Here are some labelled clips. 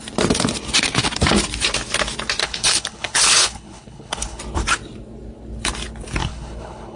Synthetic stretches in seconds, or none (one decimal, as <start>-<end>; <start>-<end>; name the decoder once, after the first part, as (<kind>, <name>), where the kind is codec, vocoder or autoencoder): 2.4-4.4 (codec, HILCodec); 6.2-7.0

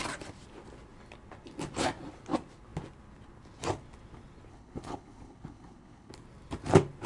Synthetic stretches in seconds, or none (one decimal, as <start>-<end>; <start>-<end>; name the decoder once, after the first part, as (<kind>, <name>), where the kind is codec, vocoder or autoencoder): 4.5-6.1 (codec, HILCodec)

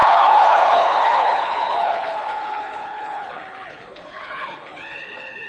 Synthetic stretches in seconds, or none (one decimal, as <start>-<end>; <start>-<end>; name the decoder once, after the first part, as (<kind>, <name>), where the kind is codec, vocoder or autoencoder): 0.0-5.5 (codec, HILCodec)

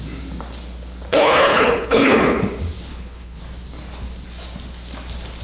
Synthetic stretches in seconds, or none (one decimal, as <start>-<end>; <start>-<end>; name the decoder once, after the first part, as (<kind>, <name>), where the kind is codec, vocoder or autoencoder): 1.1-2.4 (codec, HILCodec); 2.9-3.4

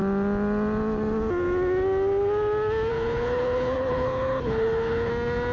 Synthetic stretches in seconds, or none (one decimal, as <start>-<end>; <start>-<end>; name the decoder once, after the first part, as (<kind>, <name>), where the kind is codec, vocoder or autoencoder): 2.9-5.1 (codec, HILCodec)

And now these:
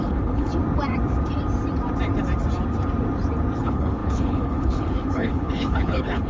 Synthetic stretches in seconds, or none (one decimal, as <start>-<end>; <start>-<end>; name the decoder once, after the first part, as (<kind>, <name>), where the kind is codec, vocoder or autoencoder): 0.0-0.5 (codec, HILCodec); 3.6-6.3

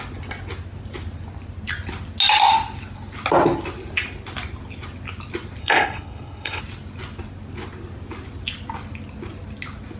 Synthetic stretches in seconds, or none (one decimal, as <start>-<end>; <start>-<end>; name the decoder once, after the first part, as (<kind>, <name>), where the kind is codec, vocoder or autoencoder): 5.6-6.6 (codec, HILCodec)